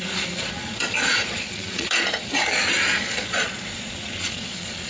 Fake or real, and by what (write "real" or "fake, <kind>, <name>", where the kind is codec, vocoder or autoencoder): fake, vocoder, Vocos